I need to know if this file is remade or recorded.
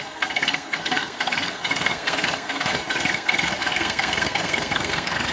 remade